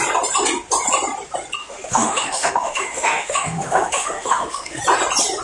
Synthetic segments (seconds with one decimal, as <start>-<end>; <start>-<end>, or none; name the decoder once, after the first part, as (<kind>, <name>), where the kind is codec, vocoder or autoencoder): 1.6-4.8 (autoencoder, DAC-VAE)